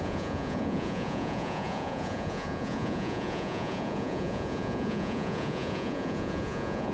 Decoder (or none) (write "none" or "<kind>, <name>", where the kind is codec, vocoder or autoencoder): vocoder, Vocos